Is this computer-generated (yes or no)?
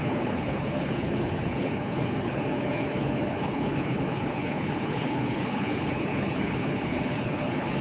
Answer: yes